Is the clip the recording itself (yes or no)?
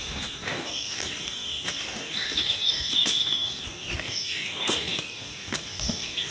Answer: no